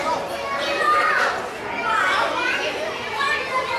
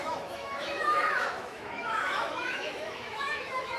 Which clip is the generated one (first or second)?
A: second